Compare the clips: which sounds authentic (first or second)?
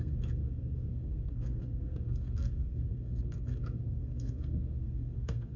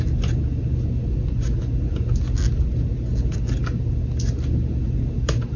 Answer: second